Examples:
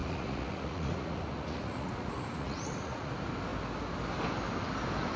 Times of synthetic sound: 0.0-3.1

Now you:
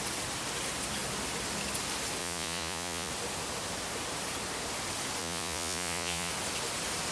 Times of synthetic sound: 2.2-3.1; 5.2-6.3

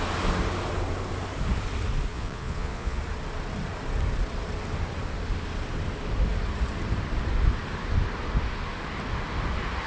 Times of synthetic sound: 2.1-3.0

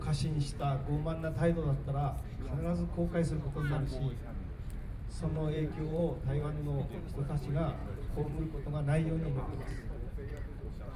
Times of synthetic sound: 5.3-6.0; 7.8-8.4

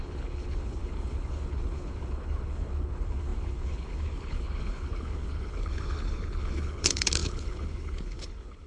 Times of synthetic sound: 0.0-8.7